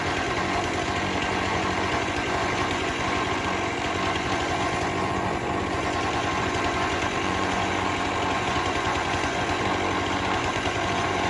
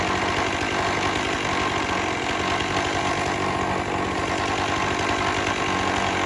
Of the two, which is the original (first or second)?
second